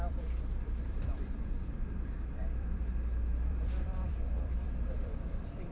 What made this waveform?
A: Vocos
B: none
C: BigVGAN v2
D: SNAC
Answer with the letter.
C